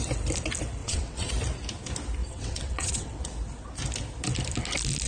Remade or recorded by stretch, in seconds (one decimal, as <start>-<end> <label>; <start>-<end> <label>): 0.0-0.8 recorded; 0.8-1.3 remade; 1.3-2.2 recorded; 2.2-3.2 remade; 3.2-5.1 recorded